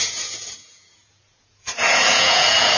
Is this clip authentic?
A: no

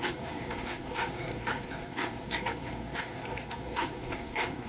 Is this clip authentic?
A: no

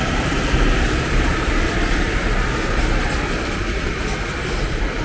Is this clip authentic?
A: no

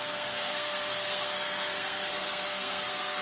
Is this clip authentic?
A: no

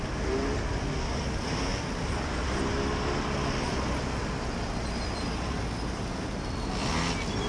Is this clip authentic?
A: yes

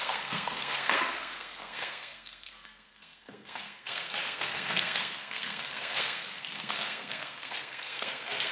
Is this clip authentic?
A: no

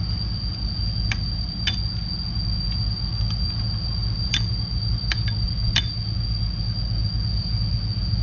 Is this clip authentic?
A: yes